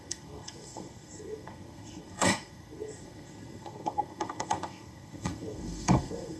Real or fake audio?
fake